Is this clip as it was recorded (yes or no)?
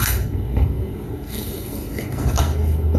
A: no